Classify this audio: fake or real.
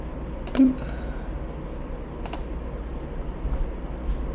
real